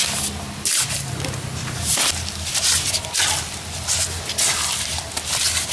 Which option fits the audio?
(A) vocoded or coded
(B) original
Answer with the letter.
B